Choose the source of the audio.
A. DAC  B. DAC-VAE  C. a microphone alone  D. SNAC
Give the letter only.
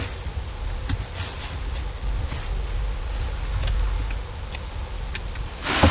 C